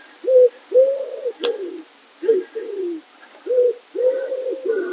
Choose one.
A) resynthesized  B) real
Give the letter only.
B